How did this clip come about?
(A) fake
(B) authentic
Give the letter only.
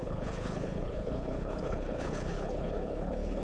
A